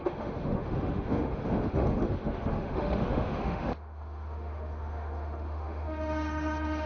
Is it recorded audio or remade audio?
remade